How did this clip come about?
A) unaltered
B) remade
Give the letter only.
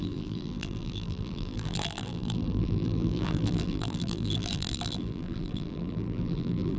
B